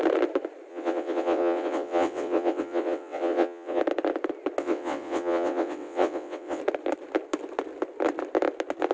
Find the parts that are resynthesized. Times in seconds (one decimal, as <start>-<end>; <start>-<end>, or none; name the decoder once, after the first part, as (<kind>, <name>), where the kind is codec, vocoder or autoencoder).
0.7-3.8 (vocoder, WaveNeXt); 4.6-6.6